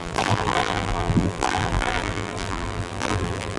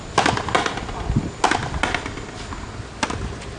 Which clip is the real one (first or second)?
second